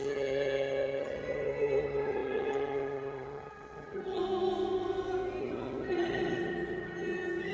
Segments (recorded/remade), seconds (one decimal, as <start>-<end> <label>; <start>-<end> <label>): 0.0-4.2 remade; 4.2-5.4 recorded; 5.4-7.5 remade